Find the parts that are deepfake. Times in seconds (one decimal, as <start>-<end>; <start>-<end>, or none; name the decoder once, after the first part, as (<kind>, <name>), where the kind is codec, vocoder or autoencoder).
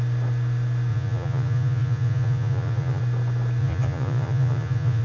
0.9-3.0 (vocoder, Vocos); 3.6-5.0